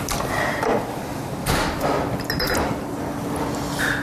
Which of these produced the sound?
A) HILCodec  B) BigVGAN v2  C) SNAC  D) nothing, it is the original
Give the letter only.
D